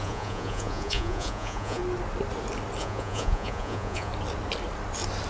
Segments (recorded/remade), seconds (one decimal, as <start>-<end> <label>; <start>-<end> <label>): 0.0-1.8 remade; 1.8-2.8 recorded; 2.8-4.1 remade; 4.1-5.3 recorded